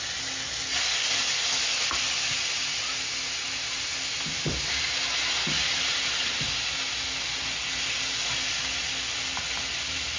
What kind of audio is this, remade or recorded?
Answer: recorded